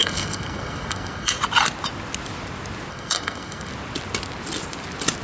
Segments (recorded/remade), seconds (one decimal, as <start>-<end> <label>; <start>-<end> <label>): 0.0-1.3 remade; 1.3-2.9 recorded; 2.9-3.7 remade; 3.7-5.2 recorded